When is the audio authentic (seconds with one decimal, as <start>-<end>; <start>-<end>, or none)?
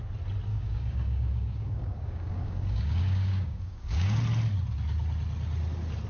0.0-0.5; 4.2-6.1